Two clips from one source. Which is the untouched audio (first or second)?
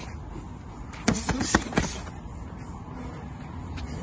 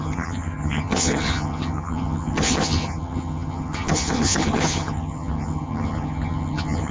first